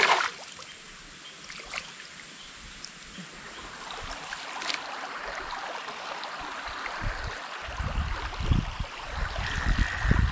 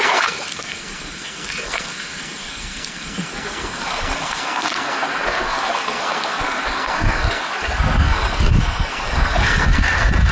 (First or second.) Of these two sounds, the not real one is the second